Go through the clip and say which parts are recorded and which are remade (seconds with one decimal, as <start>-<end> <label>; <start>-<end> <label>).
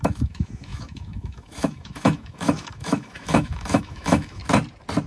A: 0.0-4.4 remade; 4.4-5.1 recorded